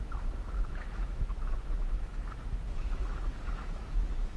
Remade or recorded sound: remade